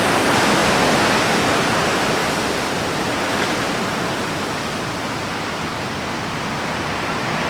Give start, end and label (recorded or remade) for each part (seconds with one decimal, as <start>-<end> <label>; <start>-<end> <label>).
0.0-7.5 recorded